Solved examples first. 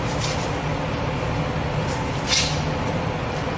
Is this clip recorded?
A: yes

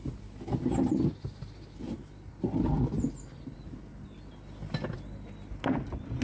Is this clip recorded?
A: yes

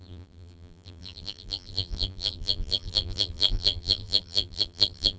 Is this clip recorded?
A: no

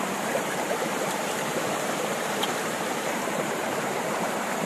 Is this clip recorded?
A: no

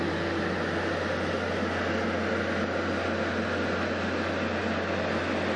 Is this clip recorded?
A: yes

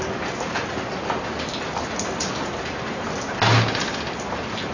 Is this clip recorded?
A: yes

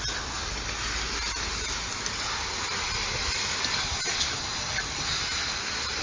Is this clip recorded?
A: yes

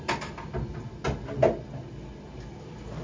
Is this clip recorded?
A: yes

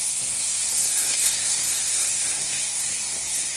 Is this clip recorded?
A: no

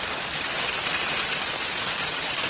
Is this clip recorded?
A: yes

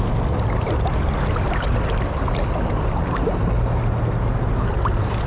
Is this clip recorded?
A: yes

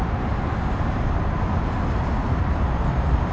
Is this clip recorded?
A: yes